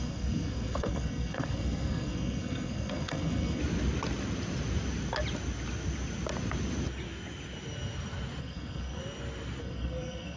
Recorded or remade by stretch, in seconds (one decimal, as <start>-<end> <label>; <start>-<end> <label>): 0.0-3.6 remade; 3.6-8.4 recorded; 8.4-9.0 remade; 9.0-9.6 recorded; 9.6-10.4 remade